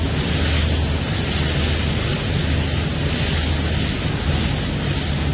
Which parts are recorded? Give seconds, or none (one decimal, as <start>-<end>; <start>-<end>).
0.0-5.3